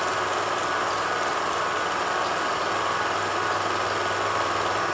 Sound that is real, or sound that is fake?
real